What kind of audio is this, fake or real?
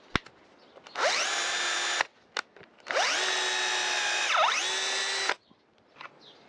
real